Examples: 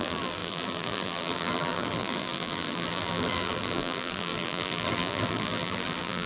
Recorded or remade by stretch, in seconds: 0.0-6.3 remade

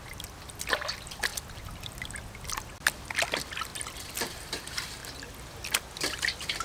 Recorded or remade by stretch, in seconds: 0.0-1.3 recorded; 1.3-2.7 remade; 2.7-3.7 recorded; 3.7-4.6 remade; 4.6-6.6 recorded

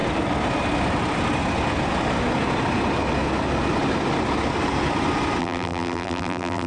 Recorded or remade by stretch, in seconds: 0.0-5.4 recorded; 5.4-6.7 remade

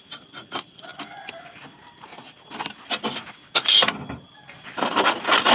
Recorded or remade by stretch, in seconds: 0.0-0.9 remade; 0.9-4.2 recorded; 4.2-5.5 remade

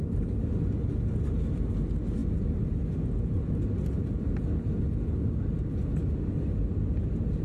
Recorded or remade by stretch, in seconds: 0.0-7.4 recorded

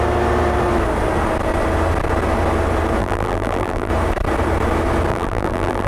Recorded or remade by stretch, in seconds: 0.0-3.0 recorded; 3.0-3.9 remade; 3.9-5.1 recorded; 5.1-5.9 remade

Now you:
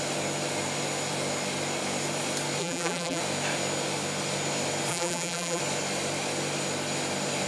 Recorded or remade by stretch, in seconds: 0.0-2.6 recorded; 2.6-3.2 remade; 3.2-4.9 recorded; 4.9-5.6 remade; 5.6-7.5 recorded

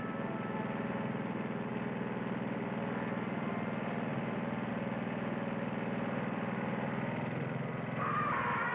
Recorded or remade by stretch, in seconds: 0.0-8.7 recorded